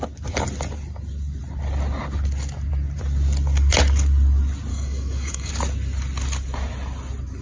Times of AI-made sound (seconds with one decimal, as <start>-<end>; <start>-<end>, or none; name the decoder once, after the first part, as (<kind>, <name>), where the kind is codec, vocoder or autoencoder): 4.7-5.5 (codec, DAC)